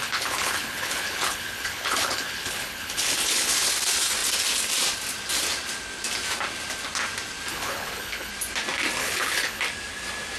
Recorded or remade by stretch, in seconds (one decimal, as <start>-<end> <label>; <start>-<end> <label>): 0.0-3.7 remade; 3.7-7.5 recorded; 7.5-8.3 remade; 8.3-9.0 recorded; 9.0-9.6 remade; 9.6-10.4 recorded